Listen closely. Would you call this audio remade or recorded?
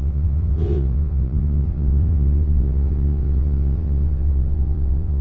remade